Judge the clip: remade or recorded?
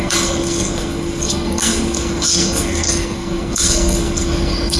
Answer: remade